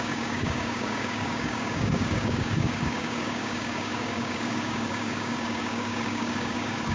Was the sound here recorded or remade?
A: remade